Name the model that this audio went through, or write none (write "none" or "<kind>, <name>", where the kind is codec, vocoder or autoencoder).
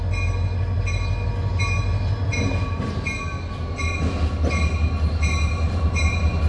none